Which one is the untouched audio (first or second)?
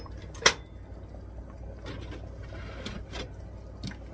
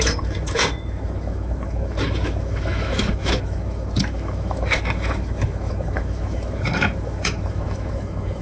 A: first